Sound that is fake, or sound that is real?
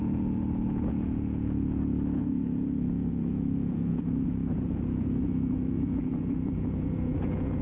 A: fake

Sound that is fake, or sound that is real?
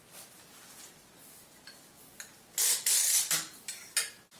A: real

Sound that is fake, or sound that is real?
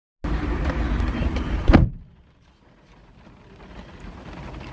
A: real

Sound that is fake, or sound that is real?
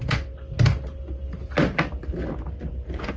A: real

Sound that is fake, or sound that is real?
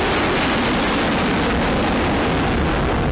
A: real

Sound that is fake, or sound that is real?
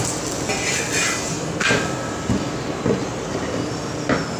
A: real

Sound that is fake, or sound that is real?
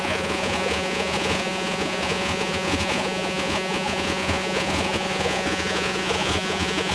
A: fake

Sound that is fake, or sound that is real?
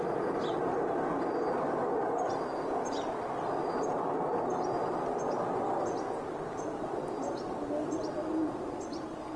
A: real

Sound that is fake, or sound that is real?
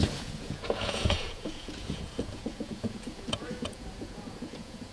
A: fake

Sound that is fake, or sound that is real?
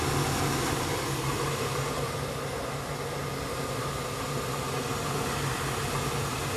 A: real